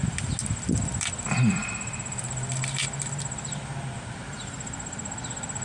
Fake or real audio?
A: real